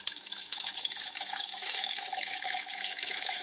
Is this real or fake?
fake